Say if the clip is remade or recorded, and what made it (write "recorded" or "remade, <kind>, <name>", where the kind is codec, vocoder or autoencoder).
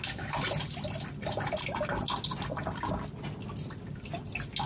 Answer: recorded